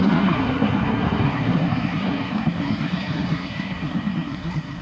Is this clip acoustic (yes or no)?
no